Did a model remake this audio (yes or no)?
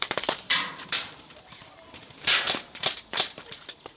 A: yes